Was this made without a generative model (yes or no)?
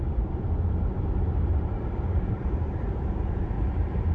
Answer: no